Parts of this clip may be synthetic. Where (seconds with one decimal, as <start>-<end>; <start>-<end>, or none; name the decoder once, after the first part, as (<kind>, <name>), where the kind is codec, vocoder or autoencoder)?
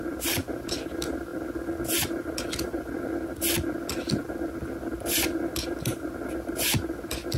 none